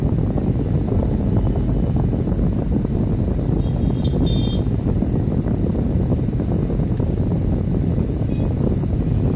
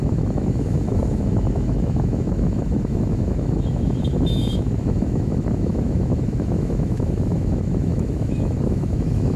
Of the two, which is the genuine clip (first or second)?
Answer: first